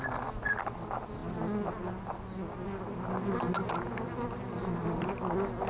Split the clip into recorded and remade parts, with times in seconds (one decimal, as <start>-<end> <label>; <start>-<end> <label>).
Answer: 0.0-5.7 recorded